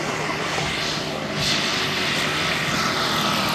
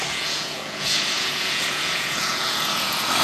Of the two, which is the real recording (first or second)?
first